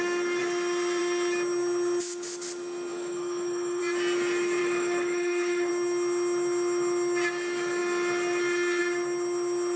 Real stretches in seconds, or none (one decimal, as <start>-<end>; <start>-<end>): 0.0-2.9; 3.8-4.6; 5.7-9.8